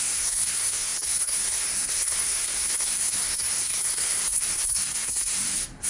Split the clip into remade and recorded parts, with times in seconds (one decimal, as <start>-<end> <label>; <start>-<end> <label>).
0.0-5.9 remade